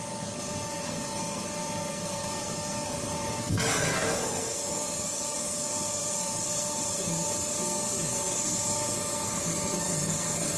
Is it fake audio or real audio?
fake